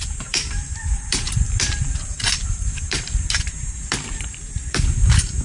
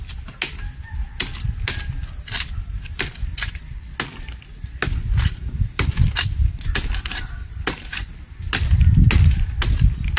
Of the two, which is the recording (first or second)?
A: second